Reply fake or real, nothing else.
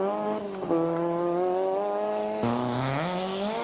fake